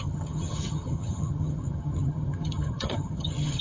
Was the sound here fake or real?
fake